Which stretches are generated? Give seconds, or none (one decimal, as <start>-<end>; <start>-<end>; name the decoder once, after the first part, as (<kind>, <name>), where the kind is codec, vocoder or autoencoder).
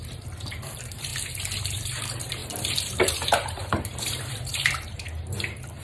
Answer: 0.0-1.1 (vocoder, BigVGAN v2); 1.6-5.8